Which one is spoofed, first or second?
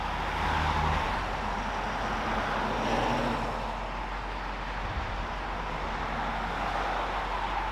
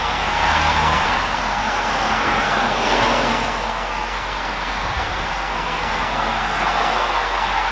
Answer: second